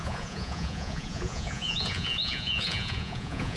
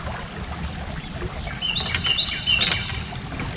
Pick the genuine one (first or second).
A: second